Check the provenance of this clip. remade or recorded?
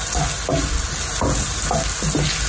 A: recorded